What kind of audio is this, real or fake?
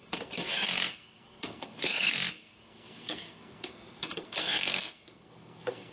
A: fake